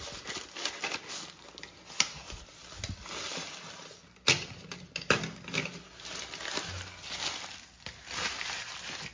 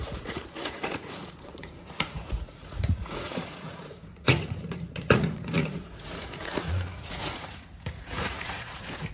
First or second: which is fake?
second